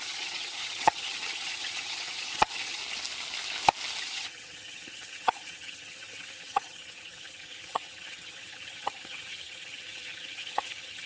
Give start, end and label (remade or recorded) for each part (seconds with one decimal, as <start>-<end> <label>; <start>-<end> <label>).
0.0-2.8 remade; 2.8-4.0 recorded; 4.0-11.1 remade